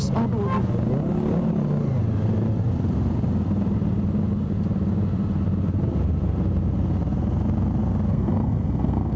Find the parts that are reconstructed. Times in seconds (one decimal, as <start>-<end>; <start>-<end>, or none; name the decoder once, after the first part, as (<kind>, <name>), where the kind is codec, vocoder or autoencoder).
8.1-9.2 (codec, SNAC)